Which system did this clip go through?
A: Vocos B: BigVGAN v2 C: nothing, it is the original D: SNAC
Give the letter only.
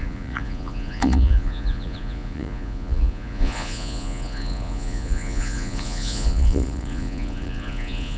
A